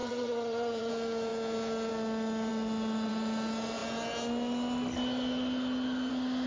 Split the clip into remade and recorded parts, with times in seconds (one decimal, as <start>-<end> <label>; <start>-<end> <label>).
0.0-0.9 remade; 0.9-6.5 recorded

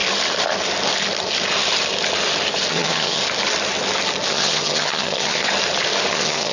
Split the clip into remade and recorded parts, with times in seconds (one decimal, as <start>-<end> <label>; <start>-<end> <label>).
0.0-2.7 recorded; 2.7-3.2 remade; 3.2-4.3 recorded; 4.3-5.4 remade; 5.4-6.1 recorded; 6.1-6.5 remade

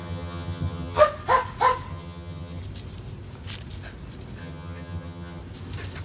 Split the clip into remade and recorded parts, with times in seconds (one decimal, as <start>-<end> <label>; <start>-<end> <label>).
0.0-1.0 remade; 1.0-1.9 recorded; 1.9-2.6 remade; 2.6-4.4 recorded; 4.4-5.4 remade; 5.4-6.0 recorded

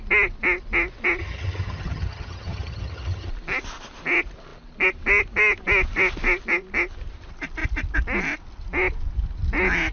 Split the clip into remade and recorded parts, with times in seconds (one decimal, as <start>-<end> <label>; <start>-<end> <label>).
0.0-1.2 recorded; 1.2-3.3 remade; 3.3-9.9 recorded

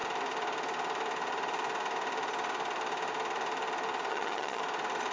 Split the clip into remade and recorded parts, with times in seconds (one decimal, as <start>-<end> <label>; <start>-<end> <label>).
0.0-4.1 recorded; 4.1-4.6 remade; 4.6-5.1 recorded

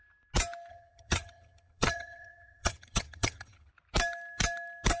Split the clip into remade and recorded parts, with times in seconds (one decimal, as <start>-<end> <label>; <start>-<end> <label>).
0.0-0.7 recorded; 0.7-3.7 remade; 3.7-5.0 recorded

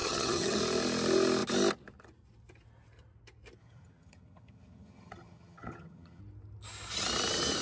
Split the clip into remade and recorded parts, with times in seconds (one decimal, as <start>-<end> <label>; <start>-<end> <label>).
0.0-0.6 remade; 0.6-3.6 recorded; 3.6-6.2 remade; 6.2-7.6 recorded

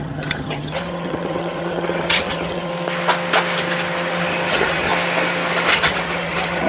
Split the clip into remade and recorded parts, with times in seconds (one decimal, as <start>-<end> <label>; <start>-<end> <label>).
0.0-2.7 remade; 2.7-4.5 recorded; 4.5-4.9 remade; 4.9-5.7 recorded; 5.7-6.7 remade